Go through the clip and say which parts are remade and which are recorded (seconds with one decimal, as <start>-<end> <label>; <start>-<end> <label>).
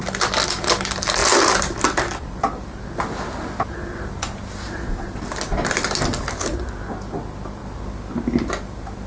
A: 0.0-9.1 recorded